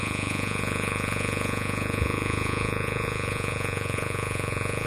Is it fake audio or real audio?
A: fake